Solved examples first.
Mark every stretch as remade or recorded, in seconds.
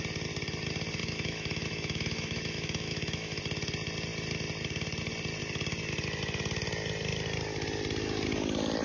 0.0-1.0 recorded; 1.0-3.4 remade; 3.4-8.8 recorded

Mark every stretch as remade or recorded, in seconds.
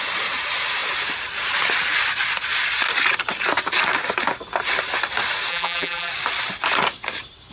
0.0-5.5 recorded; 5.5-6.1 remade; 6.1-7.5 recorded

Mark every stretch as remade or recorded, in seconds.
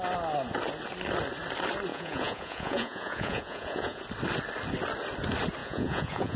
0.0-1.9 recorded; 1.9-4.0 remade; 4.0-5.6 recorded; 5.6-6.4 remade